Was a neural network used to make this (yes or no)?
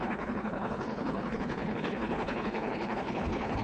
yes